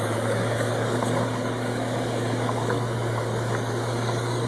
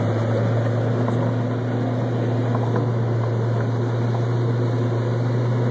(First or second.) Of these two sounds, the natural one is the second